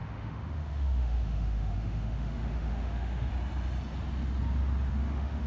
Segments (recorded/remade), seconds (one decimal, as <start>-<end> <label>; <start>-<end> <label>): 0.0-3.3 remade; 3.3-4.9 recorded; 4.9-5.5 remade